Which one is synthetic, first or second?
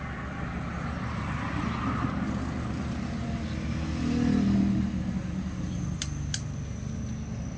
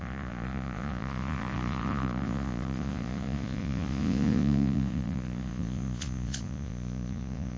second